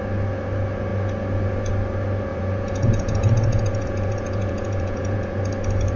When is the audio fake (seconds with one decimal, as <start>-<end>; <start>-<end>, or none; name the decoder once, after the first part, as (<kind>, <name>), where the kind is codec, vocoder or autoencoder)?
2.3-5.4 (vocoder, Vocos)